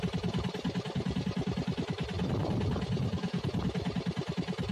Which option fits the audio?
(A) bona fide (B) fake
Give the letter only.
A